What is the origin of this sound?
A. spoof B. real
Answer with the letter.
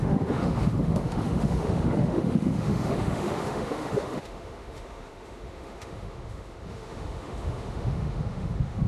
A